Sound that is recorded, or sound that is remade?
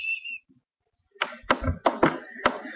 recorded